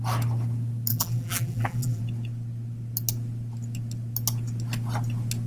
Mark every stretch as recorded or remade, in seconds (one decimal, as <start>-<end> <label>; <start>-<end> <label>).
0.0-0.9 recorded; 0.9-2.0 remade; 2.0-5.5 recorded